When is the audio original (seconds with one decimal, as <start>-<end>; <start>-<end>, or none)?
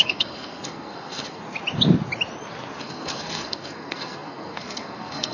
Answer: 1.4-2.8